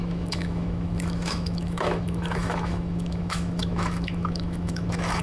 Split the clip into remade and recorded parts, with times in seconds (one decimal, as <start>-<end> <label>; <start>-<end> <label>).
0.0-5.2 remade